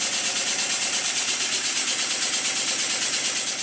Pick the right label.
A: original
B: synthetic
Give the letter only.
A